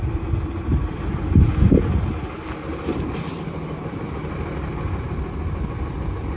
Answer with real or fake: real